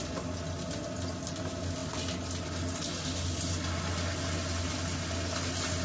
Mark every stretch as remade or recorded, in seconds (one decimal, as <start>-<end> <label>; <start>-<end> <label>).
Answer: 0.0-5.8 recorded